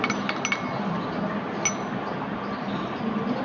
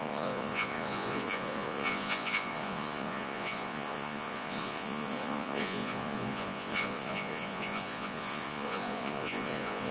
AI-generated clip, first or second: second